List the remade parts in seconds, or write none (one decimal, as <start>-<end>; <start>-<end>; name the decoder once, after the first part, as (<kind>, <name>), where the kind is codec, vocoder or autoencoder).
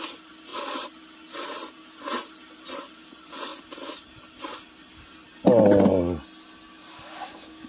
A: 6.8-7.7 (codec, DAC)